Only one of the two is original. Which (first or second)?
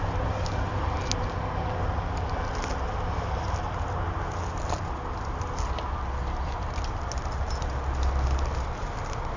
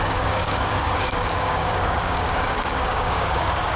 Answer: first